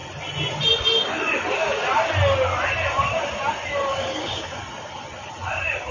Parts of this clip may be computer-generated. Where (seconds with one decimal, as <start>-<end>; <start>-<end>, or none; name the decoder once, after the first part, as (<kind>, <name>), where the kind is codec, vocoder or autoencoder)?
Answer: 3.9-4.6 (codec, DAC)